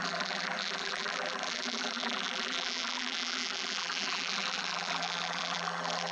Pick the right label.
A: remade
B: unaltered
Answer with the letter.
A